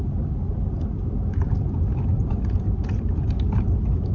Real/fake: real